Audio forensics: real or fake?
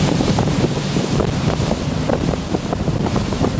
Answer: fake